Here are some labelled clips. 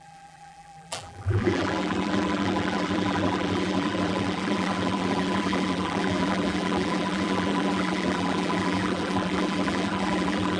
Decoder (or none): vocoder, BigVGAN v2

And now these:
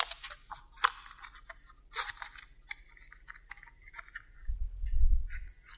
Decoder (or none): none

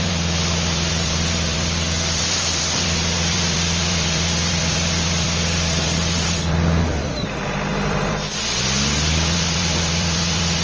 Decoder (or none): vocoder, BigVGAN v2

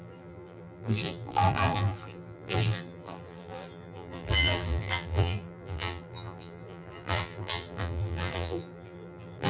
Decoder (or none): vocoder, BigVGAN v2